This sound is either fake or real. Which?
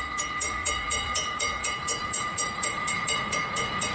fake